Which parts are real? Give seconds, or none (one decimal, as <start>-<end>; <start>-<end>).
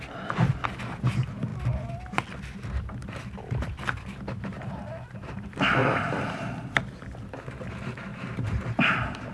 0.0-5.8; 6.8-8.1; 8.6-9.3